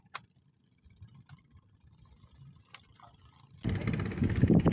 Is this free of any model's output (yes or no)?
yes